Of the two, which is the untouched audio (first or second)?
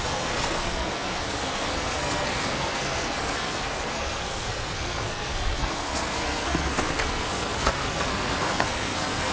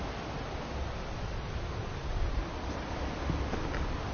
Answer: second